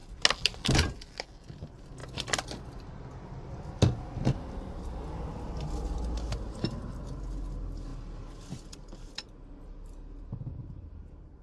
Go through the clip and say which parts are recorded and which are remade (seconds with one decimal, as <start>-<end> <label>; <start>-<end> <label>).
0.0-2.0 recorded; 2.0-4.4 remade; 4.4-11.4 recorded